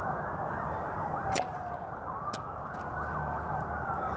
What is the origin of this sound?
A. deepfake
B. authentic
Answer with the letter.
B